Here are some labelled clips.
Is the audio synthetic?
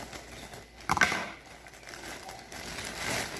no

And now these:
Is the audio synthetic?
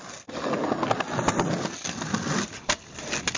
no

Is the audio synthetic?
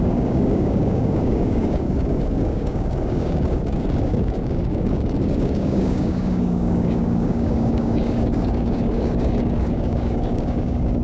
yes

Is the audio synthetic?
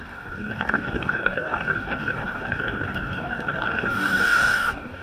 yes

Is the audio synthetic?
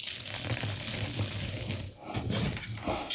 no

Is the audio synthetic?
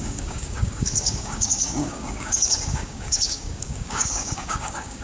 yes